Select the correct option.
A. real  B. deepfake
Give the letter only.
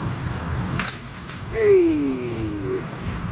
B